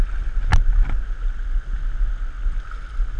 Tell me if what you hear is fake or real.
real